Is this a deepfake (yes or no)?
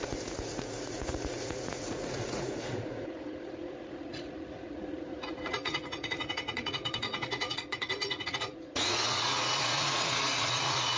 yes